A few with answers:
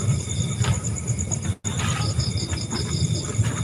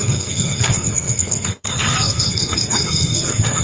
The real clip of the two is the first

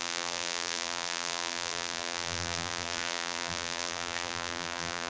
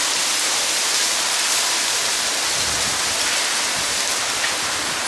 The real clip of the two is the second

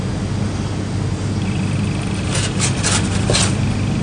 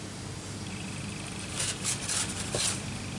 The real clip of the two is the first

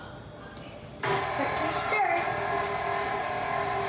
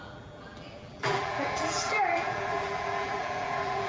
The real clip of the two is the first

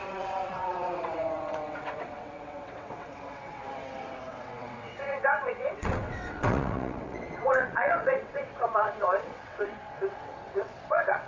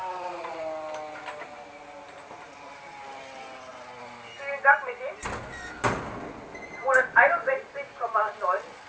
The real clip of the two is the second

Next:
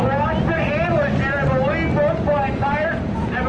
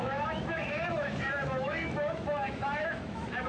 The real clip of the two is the first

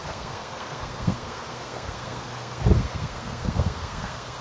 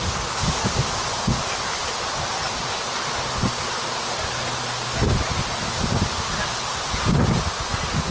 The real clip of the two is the second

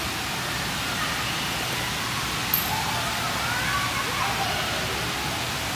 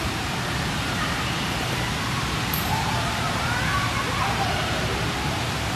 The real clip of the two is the first